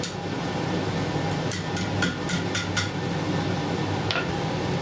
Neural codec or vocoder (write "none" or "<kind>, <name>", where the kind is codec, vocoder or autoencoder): none